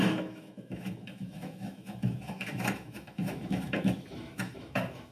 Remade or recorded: remade